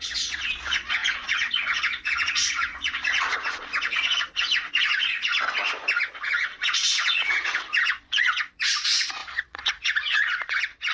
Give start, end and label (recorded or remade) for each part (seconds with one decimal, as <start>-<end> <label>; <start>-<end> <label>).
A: 0.0-5.3 remade; 5.3-6.1 recorded; 6.1-10.9 remade